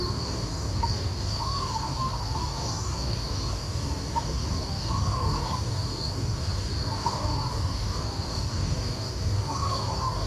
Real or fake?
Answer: fake